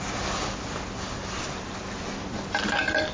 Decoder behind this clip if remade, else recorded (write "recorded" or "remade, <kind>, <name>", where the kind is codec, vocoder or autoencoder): recorded